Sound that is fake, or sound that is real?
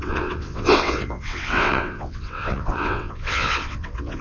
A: fake